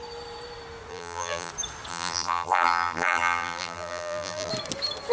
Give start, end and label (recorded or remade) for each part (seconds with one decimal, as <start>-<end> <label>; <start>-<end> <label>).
0.0-0.9 recorded; 0.9-1.5 remade; 1.5-1.9 recorded; 1.9-4.5 remade; 4.5-5.1 recorded